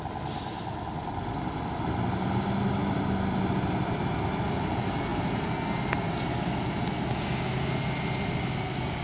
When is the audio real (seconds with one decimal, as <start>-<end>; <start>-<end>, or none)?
0.0-9.0